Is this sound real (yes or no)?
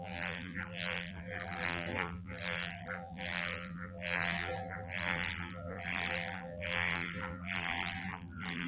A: no